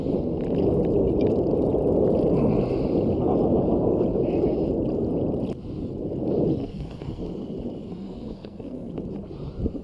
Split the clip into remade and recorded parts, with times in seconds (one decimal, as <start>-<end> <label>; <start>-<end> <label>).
0.0-6.6 recorded; 6.6-7.2 remade; 7.2-7.9 recorded; 7.9-8.9 remade; 8.9-9.8 recorded

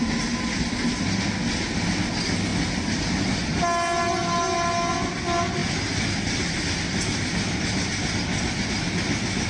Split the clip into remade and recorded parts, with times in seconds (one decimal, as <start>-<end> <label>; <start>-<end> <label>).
0.0-9.5 recorded

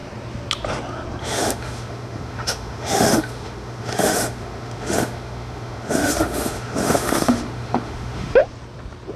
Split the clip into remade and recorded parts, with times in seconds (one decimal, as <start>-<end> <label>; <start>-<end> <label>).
0.0-1.2 recorded; 1.2-8.4 remade; 8.4-9.2 recorded

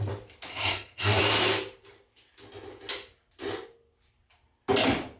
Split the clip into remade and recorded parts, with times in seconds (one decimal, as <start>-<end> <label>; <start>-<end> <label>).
0.0-0.5 recorded; 0.5-1.2 remade; 1.2-5.2 recorded

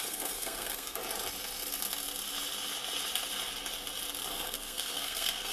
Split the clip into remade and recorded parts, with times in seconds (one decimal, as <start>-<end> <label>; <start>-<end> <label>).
0.0-1.0 remade; 1.0-4.3 recorded; 4.3-5.5 remade

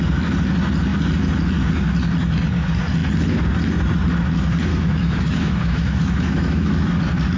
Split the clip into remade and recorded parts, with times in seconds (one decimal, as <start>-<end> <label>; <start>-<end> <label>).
0.0-4.7 recorded; 4.7-6.9 remade; 6.9-7.4 recorded

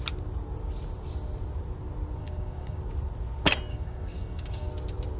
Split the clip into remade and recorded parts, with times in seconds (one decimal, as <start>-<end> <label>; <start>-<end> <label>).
0.0-2.2 recorded; 2.2-2.8 remade; 2.8-3.7 recorded; 3.7-4.7 remade; 4.7-5.2 recorded

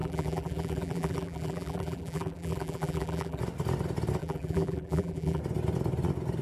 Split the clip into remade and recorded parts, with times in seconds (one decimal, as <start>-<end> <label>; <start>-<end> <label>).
0.0-3.4 remade; 3.4-4.2 recorded; 4.2-5.4 remade; 5.4-6.4 recorded